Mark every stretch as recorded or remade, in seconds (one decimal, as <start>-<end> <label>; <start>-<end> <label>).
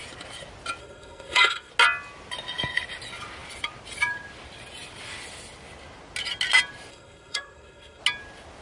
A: 0.0-0.8 recorded; 0.8-1.7 remade; 1.7-6.9 recorded; 6.9-8.0 remade; 8.0-8.6 recorded